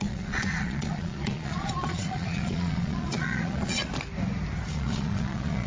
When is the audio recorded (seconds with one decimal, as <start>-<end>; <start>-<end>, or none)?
3.9-4.7

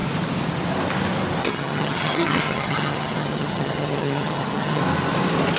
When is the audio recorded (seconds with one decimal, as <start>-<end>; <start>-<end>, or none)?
0.0-1.4; 4.8-5.6

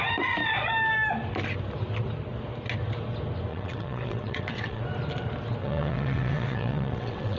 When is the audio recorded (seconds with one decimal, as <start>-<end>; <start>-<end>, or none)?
0.0-3.5; 4.8-5.6

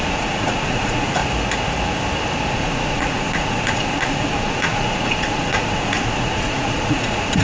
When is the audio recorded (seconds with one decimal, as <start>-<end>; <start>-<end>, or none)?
1.2-2.5

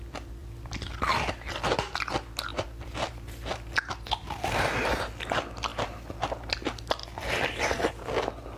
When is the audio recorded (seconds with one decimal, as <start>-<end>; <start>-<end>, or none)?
0.0-0.4; 1.5-2.5; 3.9-7.0; 7.9-8.6

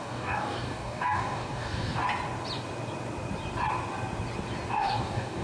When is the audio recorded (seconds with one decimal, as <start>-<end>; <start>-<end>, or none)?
2.0-4.7

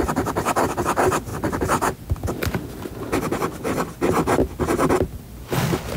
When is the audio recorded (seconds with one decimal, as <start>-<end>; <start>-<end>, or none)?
0.0-6.0